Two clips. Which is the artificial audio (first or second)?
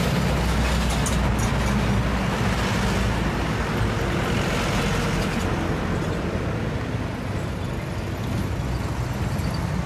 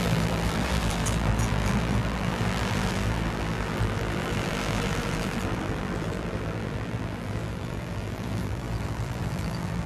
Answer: second